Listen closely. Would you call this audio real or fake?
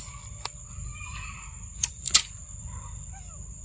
real